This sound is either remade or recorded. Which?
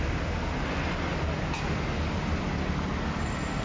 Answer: recorded